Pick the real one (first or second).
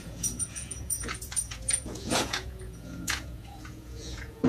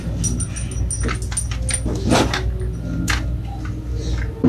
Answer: second